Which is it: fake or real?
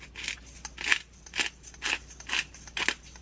real